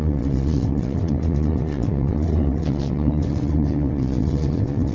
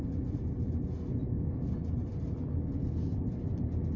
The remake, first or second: first